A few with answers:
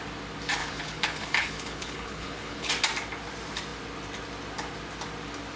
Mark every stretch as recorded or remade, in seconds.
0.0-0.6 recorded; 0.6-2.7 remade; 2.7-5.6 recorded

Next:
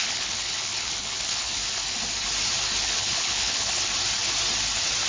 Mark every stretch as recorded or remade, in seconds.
0.0-1.6 remade; 1.6-2.8 recorded; 2.8-3.9 remade; 3.9-5.1 recorded

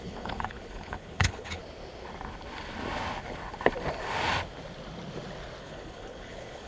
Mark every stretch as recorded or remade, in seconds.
0.0-1.6 remade; 1.6-5.6 recorded; 5.6-6.7 remade

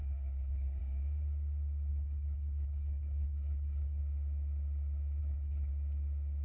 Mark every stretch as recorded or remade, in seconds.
0.0-0.8 remade; 0.8-1.9 recorded; 1.9-4.0 remade; 4.0-5.2 recorded; 5.2-5.7 remade; 5.7-6.4 recorded

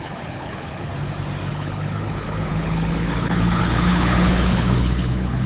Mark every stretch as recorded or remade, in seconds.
0.0-0.9 remade; 0.9-1.5 recorded; 1.5-5.5 remade

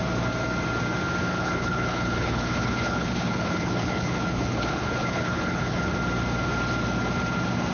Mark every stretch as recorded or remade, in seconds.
0.0-1.3 recorded; 1.3-5.9 remade; 5.9-7.7 recorded